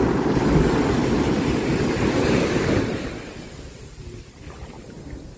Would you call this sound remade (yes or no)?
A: no